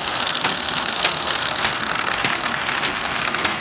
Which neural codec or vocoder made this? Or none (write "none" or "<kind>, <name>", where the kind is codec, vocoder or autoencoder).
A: codec, SNAC